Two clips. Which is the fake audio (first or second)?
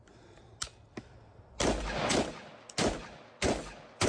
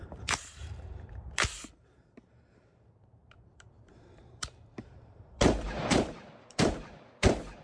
second